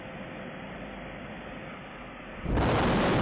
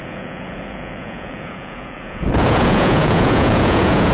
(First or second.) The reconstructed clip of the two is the second